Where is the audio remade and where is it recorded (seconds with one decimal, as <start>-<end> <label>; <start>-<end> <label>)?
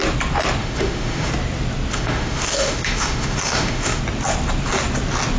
0.0-0.6 recorded; 0.6-1.3 remade; 1.3-1.9 recorded; 1.9-4.0 remade; 4.0-5.4 recorded